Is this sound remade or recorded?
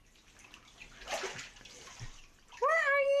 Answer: recorded